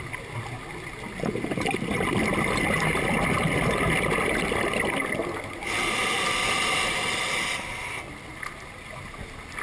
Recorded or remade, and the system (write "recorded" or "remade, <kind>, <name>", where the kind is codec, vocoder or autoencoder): recorded